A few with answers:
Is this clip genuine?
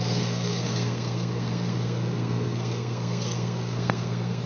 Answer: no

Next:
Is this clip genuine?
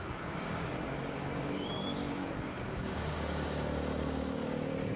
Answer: no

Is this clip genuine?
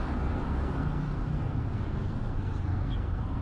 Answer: no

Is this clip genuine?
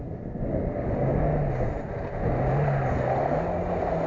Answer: yes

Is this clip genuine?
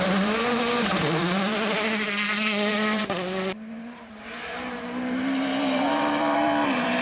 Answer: no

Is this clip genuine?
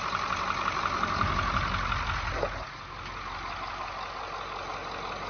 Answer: yes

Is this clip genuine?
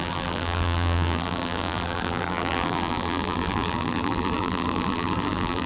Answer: no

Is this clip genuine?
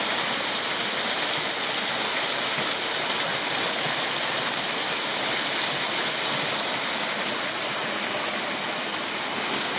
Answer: yes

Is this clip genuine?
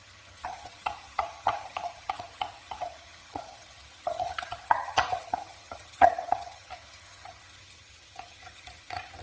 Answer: no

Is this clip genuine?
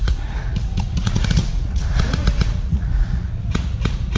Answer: no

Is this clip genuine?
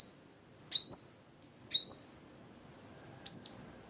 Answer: yes